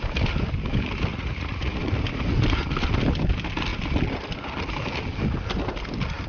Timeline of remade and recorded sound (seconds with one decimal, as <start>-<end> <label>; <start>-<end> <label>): 0.0-1.1 recorded; 1.1-1.8 remade; 1.8-6.3 recorded